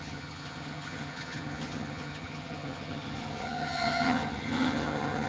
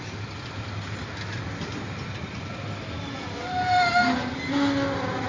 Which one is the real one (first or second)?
second